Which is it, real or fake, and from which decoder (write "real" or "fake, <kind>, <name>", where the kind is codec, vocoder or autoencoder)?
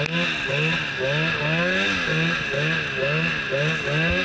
real